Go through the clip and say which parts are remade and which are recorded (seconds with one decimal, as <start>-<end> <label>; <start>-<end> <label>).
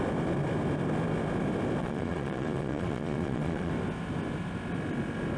0.0-1.8 recorded; 1.8-3.7 remade; 3.7-5.4 recorded